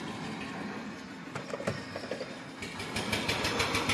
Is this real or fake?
real